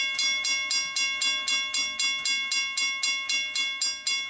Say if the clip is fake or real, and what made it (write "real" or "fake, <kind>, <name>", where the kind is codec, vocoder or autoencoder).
real